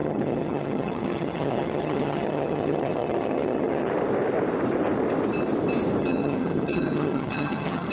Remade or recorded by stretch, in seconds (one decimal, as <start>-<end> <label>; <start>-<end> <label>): 0.0-3.9 remade; 3.9-6.0 recorded; 6.0-7.9 remade